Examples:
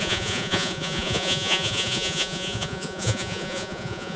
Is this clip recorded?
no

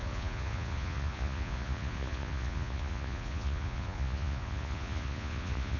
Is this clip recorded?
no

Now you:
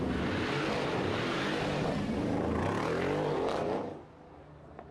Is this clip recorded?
yes